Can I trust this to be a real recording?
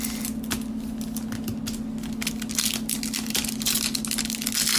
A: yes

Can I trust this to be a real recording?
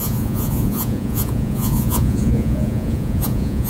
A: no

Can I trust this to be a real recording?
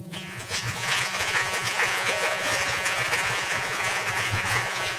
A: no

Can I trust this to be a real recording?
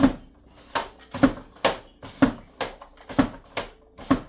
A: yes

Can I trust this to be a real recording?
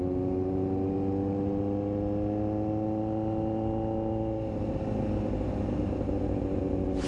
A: yes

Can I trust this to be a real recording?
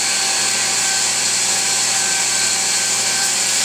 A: no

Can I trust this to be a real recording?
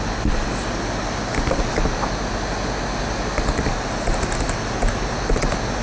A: yes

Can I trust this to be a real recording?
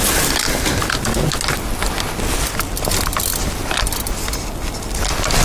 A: yes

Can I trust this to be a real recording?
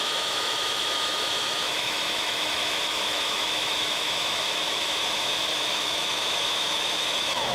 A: no